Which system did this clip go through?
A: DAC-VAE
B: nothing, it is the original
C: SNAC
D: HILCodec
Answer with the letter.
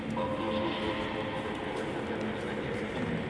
B